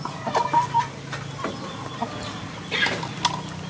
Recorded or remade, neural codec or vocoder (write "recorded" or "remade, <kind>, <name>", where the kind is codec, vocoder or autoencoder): recorded